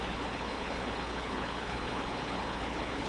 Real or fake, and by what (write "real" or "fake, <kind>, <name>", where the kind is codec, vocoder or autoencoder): fake, codec, HILCodec